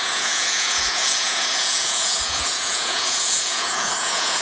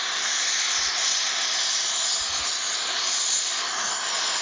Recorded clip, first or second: second